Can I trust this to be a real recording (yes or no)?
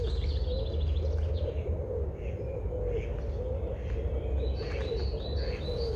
yes